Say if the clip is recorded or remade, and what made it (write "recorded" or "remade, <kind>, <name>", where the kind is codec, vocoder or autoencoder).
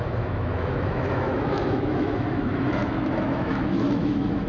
remade, autoencoder, DAC-VAE